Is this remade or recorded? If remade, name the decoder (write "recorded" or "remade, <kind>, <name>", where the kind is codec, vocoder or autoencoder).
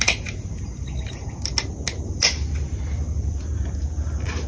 recorded